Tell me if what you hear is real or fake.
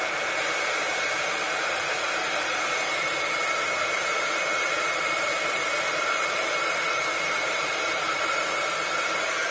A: fake